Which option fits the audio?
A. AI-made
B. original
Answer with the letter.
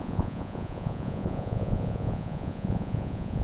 A